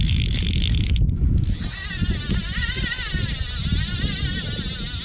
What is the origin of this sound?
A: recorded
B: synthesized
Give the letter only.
A